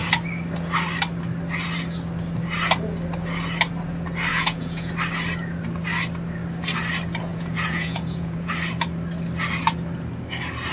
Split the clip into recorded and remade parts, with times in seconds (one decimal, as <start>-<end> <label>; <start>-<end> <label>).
0.0-4.3 recorded; 4.3-4.9 remade; 4.9-7.3 recorded; 7.3-8.5 remade; 8.5-10.7 recorded